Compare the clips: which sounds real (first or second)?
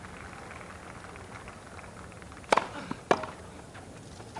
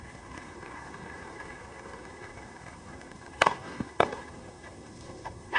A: first